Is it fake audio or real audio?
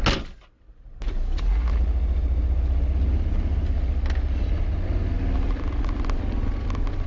real